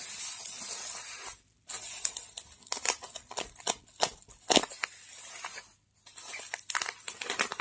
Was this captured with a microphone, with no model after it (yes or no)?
yes